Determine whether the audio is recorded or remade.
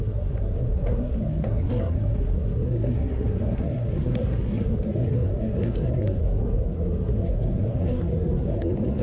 remade